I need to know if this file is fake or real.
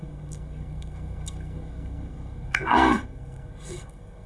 fake